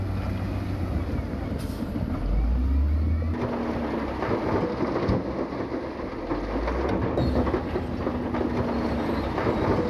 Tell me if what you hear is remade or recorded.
recorded